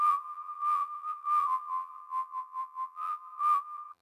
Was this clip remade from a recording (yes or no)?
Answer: yes